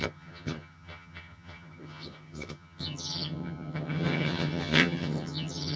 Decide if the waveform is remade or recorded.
remade